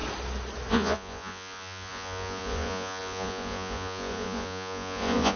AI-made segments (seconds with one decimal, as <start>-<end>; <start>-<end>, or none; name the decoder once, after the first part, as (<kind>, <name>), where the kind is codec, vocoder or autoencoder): 0.7-5.4 (vocoder, Vocos)